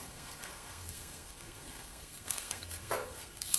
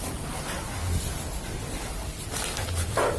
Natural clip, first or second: second